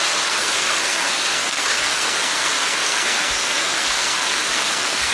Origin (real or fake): fake